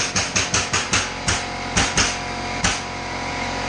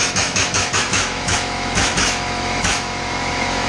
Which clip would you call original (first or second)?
first